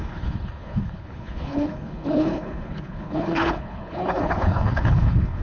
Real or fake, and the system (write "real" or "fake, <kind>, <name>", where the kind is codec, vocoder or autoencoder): fake, codec, HILCodec